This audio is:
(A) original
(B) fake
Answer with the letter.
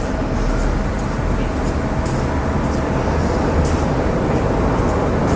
A